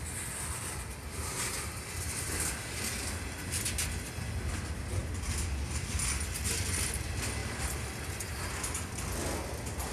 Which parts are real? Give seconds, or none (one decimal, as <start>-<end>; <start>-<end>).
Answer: 0.0-9.9